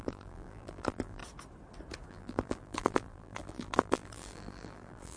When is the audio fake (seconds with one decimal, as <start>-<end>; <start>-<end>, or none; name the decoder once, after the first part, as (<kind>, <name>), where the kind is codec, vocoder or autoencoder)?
0.0-1.2 (vocoder, BigVGAN v2); 2.1-5.2